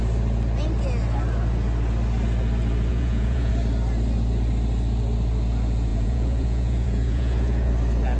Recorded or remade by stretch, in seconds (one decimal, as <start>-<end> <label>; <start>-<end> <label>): 0.0-2.9 recorded; 2.9-3.5 remade; 3.5-5.9 recorded; 5.9-7.7 remade; 7.7-8.2 recorded